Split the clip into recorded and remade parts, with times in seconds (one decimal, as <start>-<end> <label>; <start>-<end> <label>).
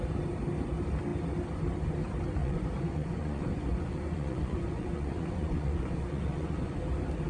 0.0-2.4 recorded; 2.4-6.8 remade; 6.8-7.3 recorded